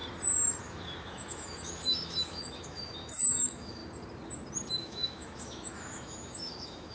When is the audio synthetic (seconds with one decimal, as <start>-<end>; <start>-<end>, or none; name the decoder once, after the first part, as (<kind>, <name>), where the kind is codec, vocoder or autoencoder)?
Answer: 0.6-3.8 (autoencoder, DAC-VAE); 4.7-6.9